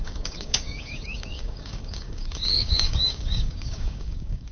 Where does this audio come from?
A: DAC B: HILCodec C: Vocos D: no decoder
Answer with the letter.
A